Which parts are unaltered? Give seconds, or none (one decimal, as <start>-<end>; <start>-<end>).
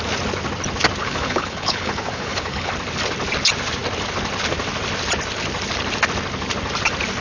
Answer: 0.0-1.0; 2.7-7.2